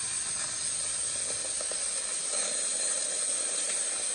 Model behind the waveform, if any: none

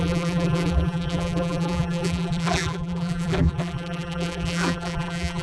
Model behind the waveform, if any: vocoder, BigVGAN v2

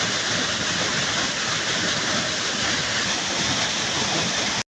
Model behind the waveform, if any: none